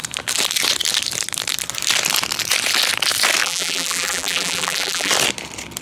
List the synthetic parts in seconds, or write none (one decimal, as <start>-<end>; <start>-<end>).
3.4-5.1